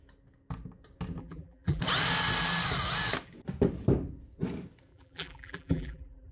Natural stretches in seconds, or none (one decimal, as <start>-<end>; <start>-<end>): 0.0-1.2; 1.8-4.9